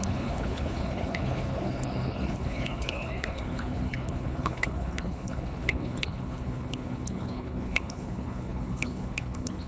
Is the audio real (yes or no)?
no